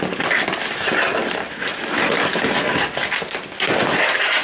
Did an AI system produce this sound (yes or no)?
no